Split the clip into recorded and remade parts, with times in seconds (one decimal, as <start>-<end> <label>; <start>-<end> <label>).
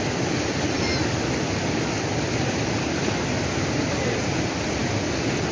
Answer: 0.0-5.5 recorded